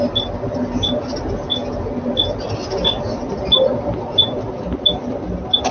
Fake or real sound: real